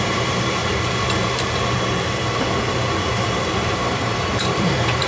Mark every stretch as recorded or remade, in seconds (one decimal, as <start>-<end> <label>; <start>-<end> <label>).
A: 0.0-0.6 remade; 0.6-3.7 recorded; 3.7-5.1 remade